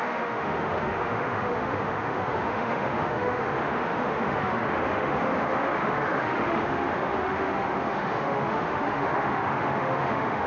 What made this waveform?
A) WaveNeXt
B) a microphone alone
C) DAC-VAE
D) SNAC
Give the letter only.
C